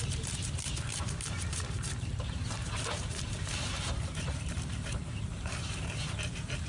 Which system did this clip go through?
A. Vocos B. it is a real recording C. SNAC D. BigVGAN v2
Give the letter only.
D